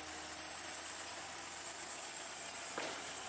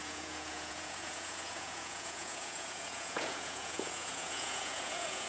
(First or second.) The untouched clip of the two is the first